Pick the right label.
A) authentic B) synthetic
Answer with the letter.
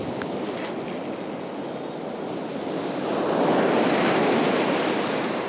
A